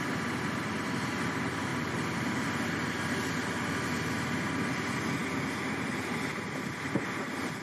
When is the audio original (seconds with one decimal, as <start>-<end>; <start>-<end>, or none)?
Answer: 0.0-7.6